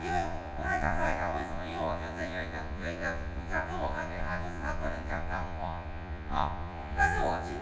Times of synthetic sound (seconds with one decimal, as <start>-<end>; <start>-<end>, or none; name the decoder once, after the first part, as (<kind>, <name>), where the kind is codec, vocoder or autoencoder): 0.0-7.6 (vocoder, Vocos)